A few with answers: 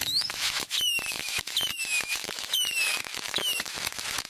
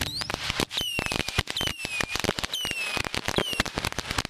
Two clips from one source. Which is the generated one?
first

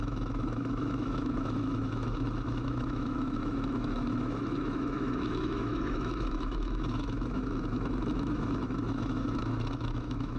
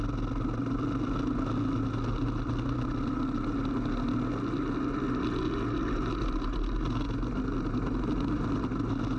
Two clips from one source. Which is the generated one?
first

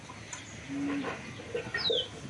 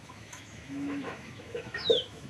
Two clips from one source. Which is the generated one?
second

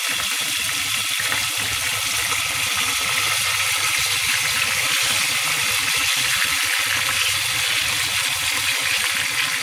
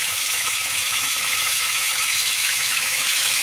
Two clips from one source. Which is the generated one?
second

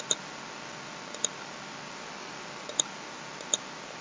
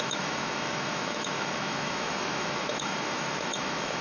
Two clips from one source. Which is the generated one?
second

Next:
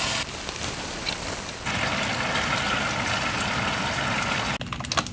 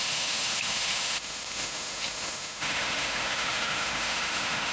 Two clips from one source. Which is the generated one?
second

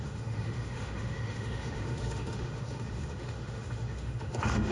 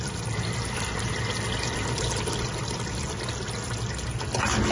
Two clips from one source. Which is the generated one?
first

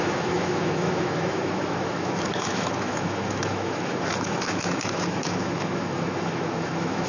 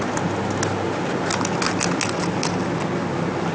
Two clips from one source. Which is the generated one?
first